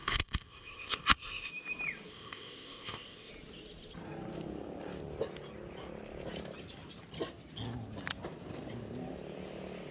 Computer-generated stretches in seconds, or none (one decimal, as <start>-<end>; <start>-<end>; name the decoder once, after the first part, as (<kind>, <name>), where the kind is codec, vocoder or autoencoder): 0.0-1.5 (codec, ZipCodec); 2.1-3.3